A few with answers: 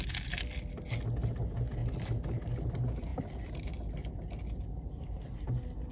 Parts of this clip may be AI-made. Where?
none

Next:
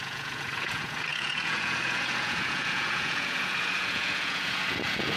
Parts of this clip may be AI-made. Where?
0.0-5.2 (vocoder, Vocos)

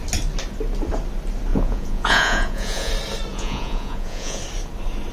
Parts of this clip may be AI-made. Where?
1.5-2.9 (vocoder, Vocos); 3.3-4.4